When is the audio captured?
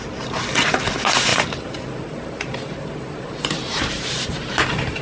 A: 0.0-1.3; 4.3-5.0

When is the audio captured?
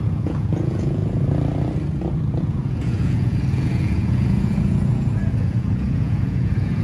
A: 1.0-2.4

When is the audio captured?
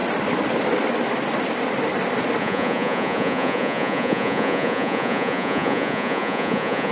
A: 0.0-2.4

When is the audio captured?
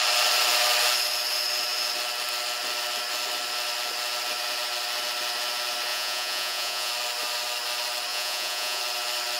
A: 0.0-5.9; 6.9-8.1; 8.8-9.4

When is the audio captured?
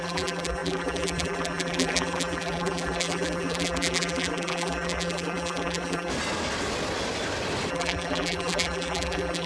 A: 6.1-7.7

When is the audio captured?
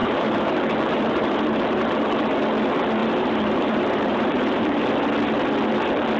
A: 1.9-3.0; 4.9-6.2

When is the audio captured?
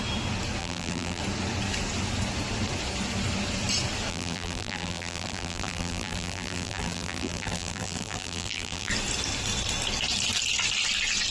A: 0.0-0.6; 1.2-4.1; 8.9-11.3